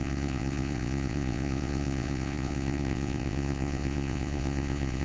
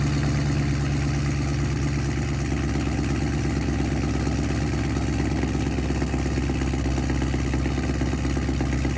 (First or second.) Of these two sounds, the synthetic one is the first